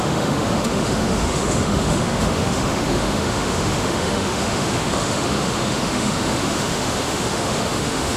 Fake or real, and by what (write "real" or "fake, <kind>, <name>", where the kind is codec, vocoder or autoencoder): fake, autoencoder, DAC-VAE